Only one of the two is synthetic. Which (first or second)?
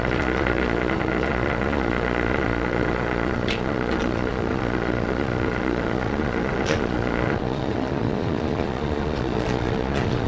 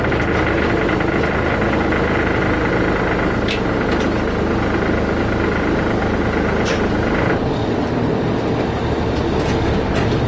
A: first